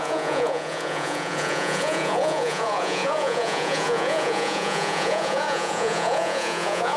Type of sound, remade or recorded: remade